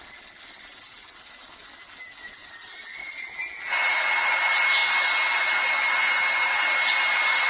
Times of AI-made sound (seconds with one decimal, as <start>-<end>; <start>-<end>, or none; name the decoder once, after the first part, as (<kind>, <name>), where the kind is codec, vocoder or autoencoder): none

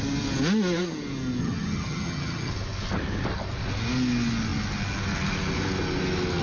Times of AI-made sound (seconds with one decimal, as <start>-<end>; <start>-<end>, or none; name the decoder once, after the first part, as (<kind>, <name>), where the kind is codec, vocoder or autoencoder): 1.4-2.5 (vocoder, HiFi-GAN)

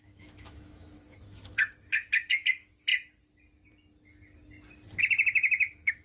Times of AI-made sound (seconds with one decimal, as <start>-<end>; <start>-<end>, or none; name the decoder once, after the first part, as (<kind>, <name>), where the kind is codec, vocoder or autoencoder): 0.0-2.9 (autoencoder, DAC-VAE); 5.0-6.0

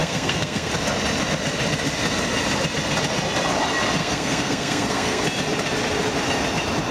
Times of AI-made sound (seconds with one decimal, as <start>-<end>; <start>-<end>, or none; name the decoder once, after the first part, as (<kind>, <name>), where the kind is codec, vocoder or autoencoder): 0.0-0.7 (codec, SNAC); 4.0-5.2

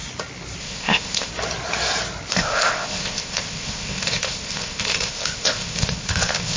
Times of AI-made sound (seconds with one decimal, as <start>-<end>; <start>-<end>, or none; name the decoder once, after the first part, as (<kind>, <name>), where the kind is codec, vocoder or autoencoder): 0.6-1.3 (codec, ZipCodec); 2.3-6.6

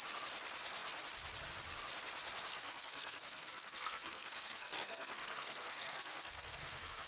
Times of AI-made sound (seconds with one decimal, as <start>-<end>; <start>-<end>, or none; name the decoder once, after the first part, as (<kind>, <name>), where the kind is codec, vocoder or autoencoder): 2.5-7.1 (codec, SNAC)

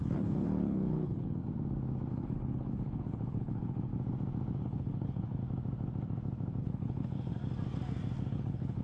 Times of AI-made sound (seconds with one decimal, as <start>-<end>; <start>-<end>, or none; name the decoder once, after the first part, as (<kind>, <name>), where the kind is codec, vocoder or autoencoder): 0.0-1.4 (codec, HILCodec); 2.1-3.9; 4.6-5.4; 6.6-7.3; 8.3-8.8